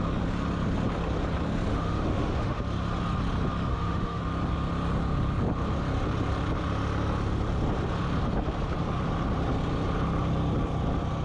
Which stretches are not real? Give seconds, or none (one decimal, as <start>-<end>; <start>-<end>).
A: 1.7-2.6; 3.7-4.2